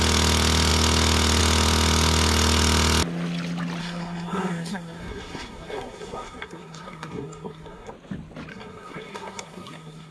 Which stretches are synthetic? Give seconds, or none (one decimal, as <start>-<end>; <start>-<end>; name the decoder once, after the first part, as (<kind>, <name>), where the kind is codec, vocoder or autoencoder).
3.8-7.9 (codec, SNAC); 8.5-10.1